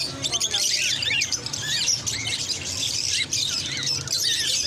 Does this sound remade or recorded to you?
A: recorded